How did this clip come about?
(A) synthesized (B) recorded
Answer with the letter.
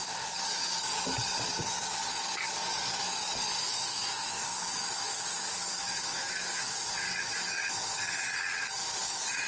A